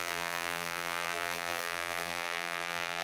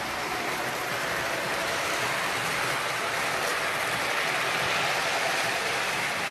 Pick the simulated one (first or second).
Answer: first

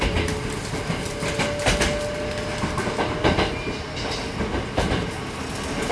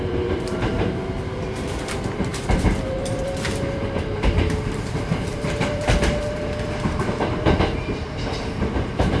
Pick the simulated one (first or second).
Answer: second